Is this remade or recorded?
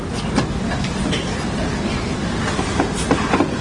recorded